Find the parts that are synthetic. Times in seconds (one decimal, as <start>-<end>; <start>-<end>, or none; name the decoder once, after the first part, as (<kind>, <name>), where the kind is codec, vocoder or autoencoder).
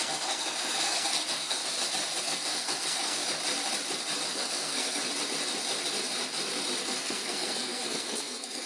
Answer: 0.0-1.6 (codec, SNAC); 2.2-3.2; 4.3-5.0; 6.8-8.7